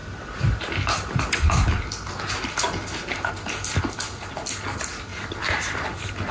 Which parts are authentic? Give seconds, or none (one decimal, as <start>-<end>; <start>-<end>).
0.0-5.1; 5.6-6.3